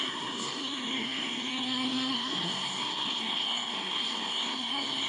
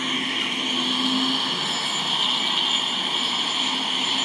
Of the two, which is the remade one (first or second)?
first